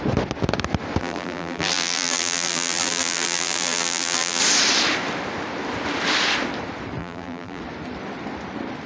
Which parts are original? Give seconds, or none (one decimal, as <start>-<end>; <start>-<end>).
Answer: 0.0-1.0; 4.4-7.0; 7.6-8.9